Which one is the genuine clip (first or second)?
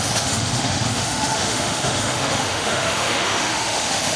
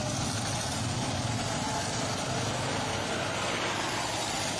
second